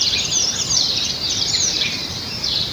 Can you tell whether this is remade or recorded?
remade